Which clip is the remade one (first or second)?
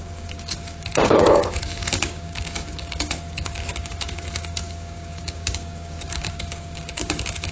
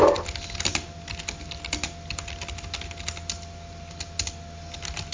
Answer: first